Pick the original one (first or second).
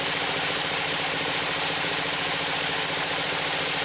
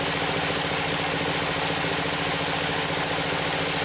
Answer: second